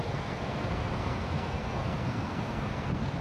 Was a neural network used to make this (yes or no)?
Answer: yes